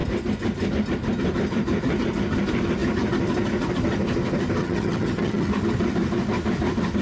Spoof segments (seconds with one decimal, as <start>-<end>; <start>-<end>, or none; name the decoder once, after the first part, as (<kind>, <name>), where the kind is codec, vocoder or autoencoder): 4.6-5.5 (vocoder, HiFi-GAN)